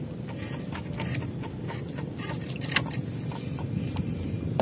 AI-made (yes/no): no